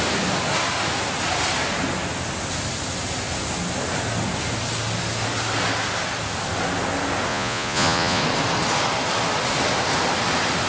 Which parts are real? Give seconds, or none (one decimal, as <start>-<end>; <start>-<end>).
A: 0.0-7.3; 8.2-10.7